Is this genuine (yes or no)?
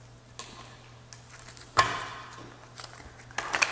yes